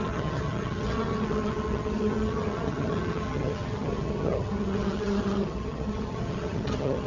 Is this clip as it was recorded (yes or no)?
no